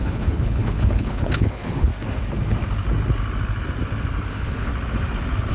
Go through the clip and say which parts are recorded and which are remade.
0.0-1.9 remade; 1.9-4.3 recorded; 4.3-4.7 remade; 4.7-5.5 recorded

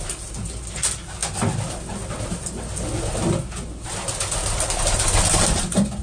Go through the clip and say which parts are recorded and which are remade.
0.0-6.0 recorded

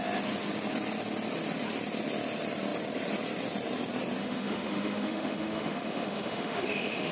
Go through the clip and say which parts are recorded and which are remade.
0.0-4.2 recorded; 4.2-7.1 remade

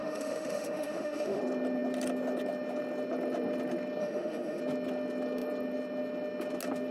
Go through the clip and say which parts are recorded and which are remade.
0.0-1.4 remade; 1.4-4.0 recorded; 4.0-4.6 remade; 4.6-6.9 recorded

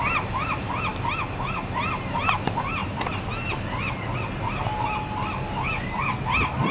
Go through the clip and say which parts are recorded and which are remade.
0.0-6.7 recorded